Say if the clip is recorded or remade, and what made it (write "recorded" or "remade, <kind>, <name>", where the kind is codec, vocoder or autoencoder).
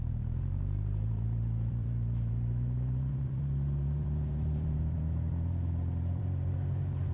remade, vocoder, BigVGAN v2